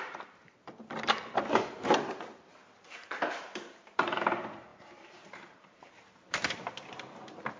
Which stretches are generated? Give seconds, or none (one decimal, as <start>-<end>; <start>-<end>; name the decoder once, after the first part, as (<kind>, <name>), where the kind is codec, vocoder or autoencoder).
0.0-0.4 (vocoder, BigVGAN v2); 3.8-7.6